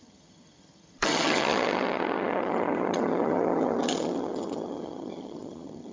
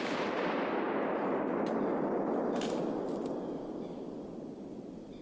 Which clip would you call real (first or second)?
second